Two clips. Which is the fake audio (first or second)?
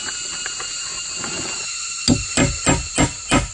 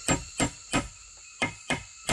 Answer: second